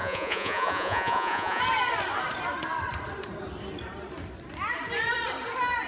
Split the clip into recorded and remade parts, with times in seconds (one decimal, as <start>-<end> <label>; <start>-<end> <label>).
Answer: 0.0-1.6 remade; 1.6-5.9 recorded